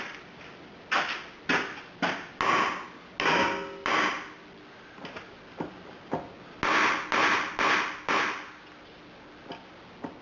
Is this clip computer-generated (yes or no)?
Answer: no